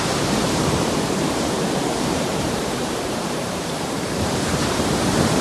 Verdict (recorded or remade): remade